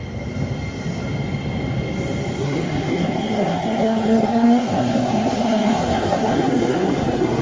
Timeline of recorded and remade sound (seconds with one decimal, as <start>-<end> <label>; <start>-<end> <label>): 0.0-2.4 recorded; 2.4-7.4 remade